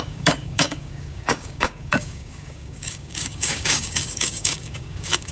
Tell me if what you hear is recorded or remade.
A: remade